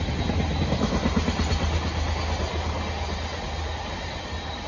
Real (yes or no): yes